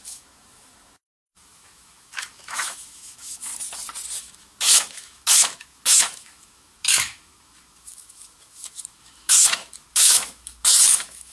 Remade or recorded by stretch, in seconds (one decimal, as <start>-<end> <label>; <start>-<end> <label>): 0.0-3.5 remade; 3.5-4.2 recorded; 4.2-11.3 remade